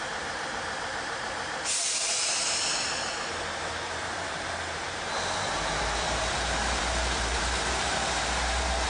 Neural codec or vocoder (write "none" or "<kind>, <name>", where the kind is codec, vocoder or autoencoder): vocoder, BigVGAN v2